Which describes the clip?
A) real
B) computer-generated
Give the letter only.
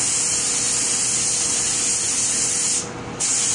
A